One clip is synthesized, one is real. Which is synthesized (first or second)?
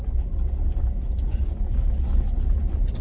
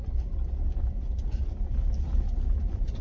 second